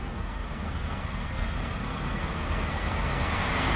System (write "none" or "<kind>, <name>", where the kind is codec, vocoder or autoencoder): codec, SNAC